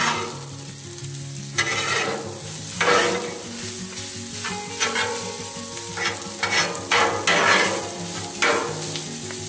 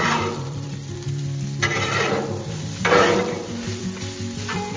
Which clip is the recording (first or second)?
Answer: first